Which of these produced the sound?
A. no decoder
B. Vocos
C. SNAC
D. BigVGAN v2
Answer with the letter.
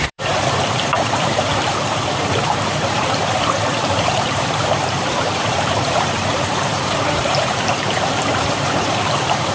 D